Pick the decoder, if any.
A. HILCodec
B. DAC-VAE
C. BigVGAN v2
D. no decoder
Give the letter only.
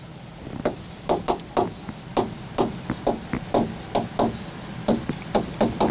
D